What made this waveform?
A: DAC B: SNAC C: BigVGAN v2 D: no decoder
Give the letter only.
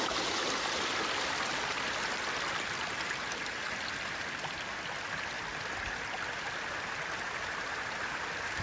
D